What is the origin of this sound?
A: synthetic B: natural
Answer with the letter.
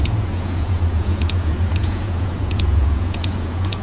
A